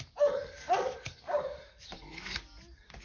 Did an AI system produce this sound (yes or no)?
yes